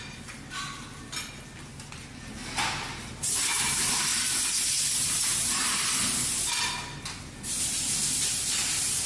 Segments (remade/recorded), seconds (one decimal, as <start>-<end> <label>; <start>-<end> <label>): 0.0-4.1 recorded; 4.1-4.6 remade; 4.6-8.0 recorded; 8.0-8.6 remade; 8.6-9.1 recorded